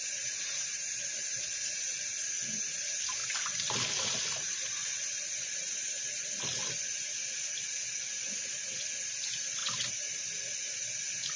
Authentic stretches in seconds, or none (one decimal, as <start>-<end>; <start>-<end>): 0.0-3.2; 7.3-11.4